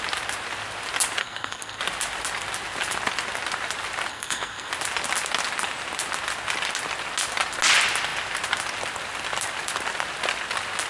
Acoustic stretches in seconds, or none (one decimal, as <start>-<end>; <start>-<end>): 0.0-1.2; 1.8-4.1; 4.7-10.9